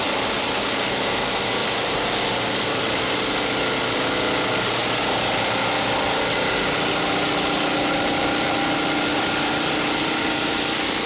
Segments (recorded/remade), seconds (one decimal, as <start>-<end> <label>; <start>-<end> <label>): 0.0-1.6 recorded; 1.6-2.9 remade; 2.9-11.1 recorded